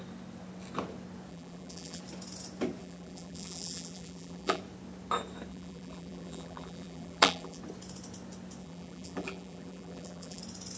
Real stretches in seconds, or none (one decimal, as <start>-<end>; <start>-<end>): 0.0-1.3; 2.0-2.8; 4.6-5.5; 7.6-8.6; 10.4-10.8